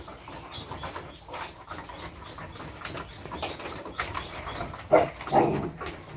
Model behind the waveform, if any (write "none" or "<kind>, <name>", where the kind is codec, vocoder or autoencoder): none